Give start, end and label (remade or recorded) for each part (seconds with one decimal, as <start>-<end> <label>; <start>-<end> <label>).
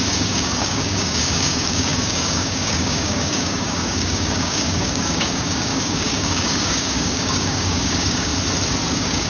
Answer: 0.0-8.3 remade; 8.3-8.9 recorded; 8.9-9.3 remade